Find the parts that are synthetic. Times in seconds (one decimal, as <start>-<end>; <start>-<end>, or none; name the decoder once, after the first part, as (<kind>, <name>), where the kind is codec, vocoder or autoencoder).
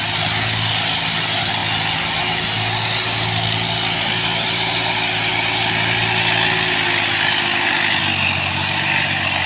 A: none